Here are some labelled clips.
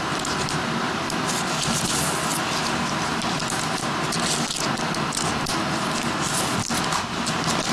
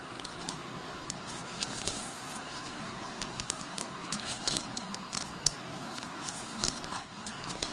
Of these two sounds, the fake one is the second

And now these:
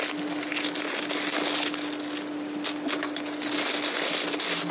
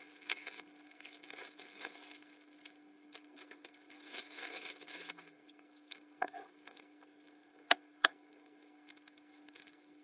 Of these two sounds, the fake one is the second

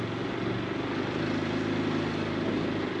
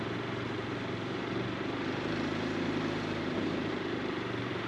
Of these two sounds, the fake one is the second